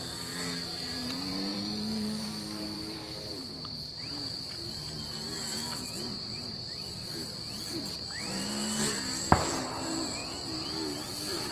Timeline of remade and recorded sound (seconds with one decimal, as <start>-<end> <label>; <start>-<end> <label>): 0.0-10.2 remade; 10.2-11.1 recorded; 11.1-11.5 remade